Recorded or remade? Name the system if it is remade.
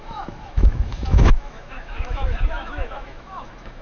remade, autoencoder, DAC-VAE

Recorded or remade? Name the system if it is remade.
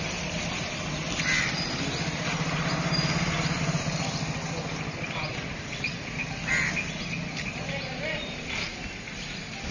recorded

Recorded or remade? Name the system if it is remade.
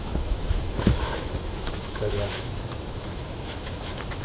remade, autoencoder, DAC-VAE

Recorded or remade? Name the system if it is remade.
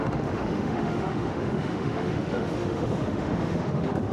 remade, autoencoder, DAC-VAE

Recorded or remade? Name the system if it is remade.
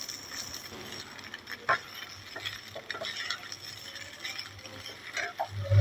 recorded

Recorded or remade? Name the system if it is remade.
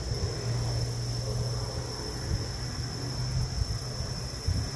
recorded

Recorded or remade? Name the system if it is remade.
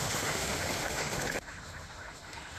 remade, autoencoder, DAC-VAE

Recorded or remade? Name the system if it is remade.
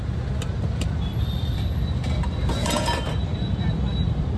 recorded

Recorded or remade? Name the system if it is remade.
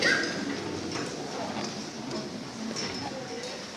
recorded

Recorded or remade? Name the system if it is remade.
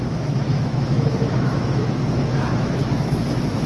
remade, autoencoder, DAC-VAE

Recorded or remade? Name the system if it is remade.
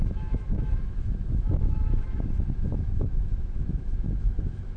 remade, autoencoder, DAC-VAE